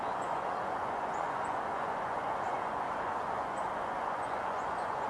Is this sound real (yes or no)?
no